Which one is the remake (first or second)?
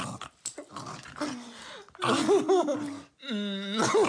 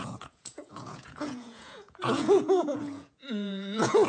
second